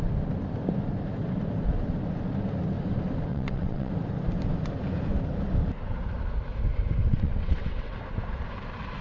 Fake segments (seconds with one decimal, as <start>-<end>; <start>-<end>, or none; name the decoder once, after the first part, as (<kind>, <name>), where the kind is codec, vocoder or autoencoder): 3.3-3.9 (vocoder, WaveNeXt); 7.1-8.0